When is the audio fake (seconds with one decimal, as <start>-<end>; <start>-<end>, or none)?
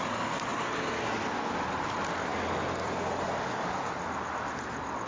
none